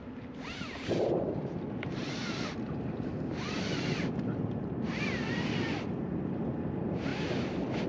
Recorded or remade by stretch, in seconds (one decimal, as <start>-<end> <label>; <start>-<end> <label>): 0.0-7.9 recorded